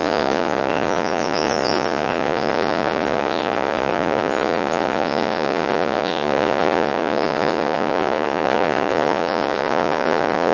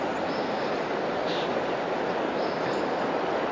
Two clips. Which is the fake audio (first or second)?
first